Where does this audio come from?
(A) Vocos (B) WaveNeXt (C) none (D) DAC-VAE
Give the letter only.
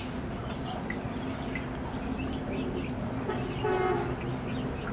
C